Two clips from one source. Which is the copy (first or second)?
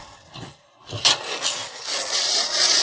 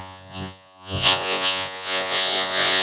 second